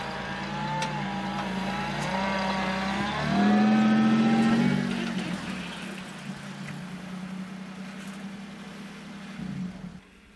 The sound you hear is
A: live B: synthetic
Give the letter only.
A